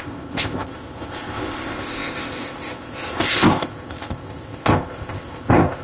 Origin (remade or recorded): remade